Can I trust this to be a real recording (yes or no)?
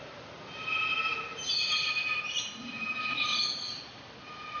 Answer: no